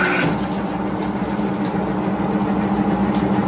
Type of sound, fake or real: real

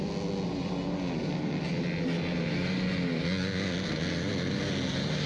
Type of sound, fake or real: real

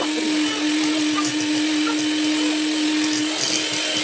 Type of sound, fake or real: real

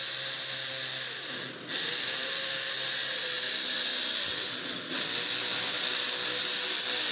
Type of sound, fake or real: real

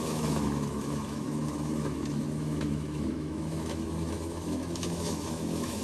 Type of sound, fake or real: fake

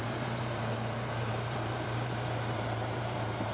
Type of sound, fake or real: fake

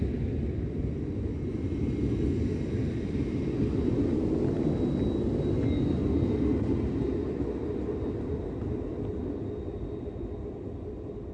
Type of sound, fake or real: real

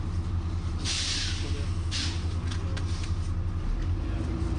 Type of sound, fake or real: real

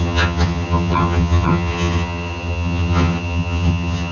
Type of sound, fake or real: fake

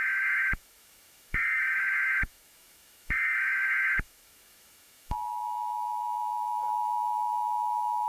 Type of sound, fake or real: fake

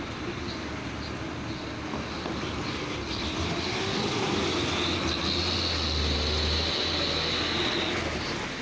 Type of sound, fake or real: real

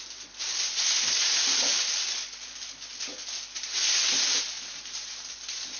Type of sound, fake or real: real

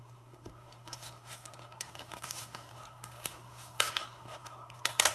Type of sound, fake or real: fake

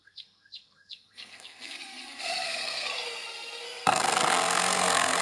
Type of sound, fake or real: fake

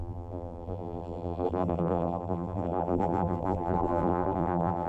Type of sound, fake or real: fake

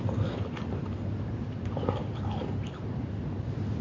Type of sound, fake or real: real